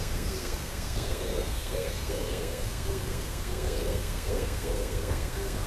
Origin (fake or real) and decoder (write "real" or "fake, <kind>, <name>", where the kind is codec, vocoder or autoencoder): fake, codec, SNAC